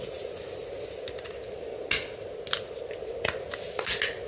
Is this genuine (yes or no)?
yes